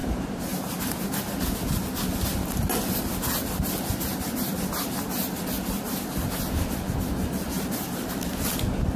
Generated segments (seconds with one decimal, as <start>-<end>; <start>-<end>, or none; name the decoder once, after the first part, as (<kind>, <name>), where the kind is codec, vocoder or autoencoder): 0.0-0.8 (vocoder, BigVGAN v2)

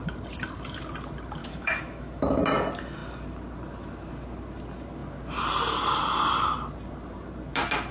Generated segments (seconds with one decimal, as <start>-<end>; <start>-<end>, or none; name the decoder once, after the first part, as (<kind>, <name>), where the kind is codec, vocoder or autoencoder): 1.4-2.4 (autoencoder, DAC-VAE)

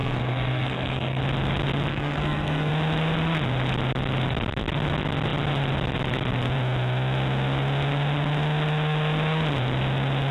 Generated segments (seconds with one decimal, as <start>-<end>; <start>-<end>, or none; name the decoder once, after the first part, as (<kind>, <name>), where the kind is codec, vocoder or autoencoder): 0.0-1.2 (codec, SNAC); 1.9-2.7

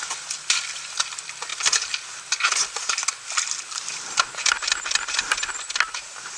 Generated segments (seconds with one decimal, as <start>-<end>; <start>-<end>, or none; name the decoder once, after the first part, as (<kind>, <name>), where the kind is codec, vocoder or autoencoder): none

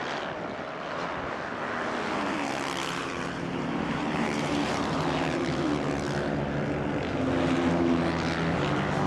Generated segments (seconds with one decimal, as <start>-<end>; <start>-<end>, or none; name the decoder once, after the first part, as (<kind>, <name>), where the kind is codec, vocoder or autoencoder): 2.8-5.0 (vocoder, BigVGAN v2)

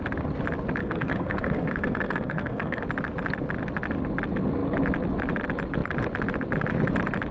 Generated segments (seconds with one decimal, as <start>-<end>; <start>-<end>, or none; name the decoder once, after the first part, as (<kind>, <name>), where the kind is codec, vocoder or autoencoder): 0.8-2.8 (codec, SNAC)

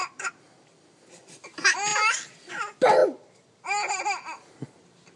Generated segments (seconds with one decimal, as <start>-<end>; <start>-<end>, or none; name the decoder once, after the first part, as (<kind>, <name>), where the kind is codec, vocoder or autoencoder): 0.0-1.3 (vocoder, BigVGAN v2); 3.0-4.5